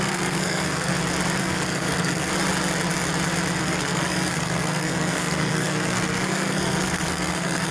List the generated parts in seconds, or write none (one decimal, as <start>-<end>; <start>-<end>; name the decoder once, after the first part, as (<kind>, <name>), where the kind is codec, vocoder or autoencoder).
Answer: 0.0-0.9 (codec, SNAC); 1.4-2.3; 3.6-7.7